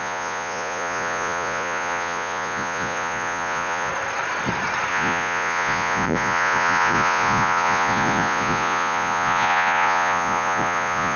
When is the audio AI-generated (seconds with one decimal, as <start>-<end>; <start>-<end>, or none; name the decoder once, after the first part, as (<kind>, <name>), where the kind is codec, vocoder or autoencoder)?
0.0-3.9 (vocoder, Vocos); 4.9-11.2